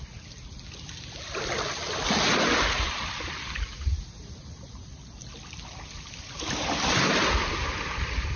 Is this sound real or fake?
real